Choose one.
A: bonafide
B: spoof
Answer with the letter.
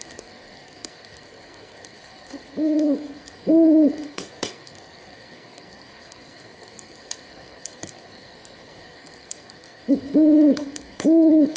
B